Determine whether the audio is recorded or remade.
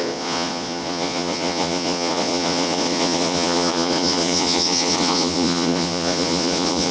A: remade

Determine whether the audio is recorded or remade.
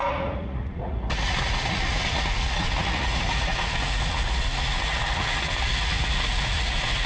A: remade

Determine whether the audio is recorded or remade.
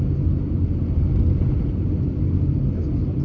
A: recorded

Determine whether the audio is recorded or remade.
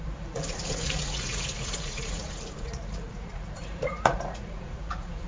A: remade